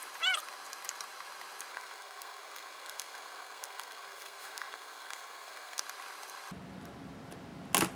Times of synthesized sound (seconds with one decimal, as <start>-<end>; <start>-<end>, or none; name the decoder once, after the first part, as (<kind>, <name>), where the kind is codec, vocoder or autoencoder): 1.7-5.8 (codec, SNAC)